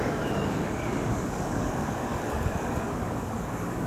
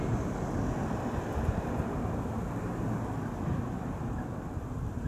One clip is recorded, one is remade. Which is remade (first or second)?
first